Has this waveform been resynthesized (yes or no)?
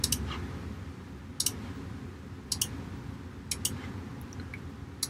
no